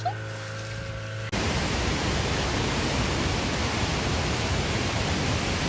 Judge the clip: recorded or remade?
recorded